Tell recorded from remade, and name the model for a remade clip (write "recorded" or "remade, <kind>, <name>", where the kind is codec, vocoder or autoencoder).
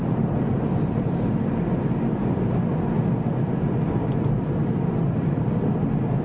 recorded